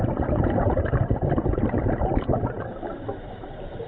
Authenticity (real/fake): fake